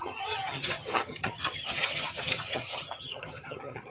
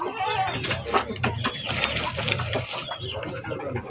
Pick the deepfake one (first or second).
first